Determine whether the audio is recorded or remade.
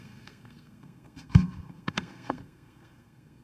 remade